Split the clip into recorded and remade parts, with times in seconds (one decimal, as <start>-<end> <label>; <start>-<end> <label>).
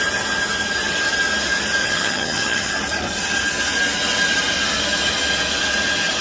0.0-1.8 recorded; 1.8-2.7 remade; 2.7-6.2 recorded